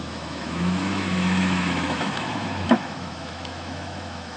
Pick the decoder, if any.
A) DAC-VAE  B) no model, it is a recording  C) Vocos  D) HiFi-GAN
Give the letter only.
A